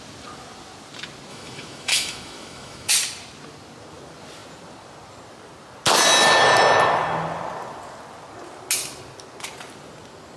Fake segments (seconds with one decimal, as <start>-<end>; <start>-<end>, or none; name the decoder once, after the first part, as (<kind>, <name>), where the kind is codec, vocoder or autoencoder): 1.3-2.9 (autoencoder, DAC-VAE)